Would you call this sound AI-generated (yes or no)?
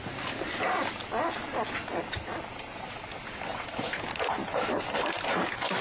no